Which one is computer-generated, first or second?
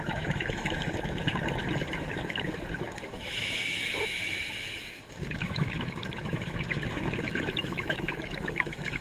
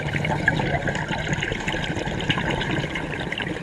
first